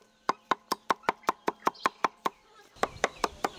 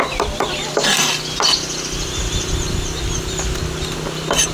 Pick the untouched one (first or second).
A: second